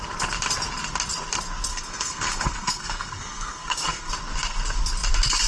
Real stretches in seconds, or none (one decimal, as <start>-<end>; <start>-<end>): 0.0-1.7; 4.1-5.5